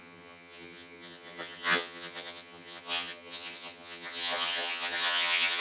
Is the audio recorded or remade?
remade